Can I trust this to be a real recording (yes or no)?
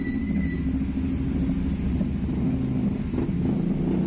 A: yes